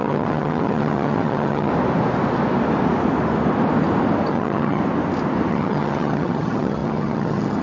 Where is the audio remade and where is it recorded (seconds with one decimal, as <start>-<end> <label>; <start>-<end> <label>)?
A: 0.0-1.7 remade; 1.7-4.3 recorded; 4.3-4.8 remade; 4.8-5.5 recorded; 5.5-7.6 remade